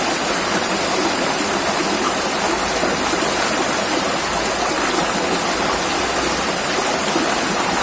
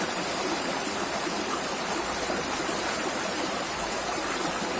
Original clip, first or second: first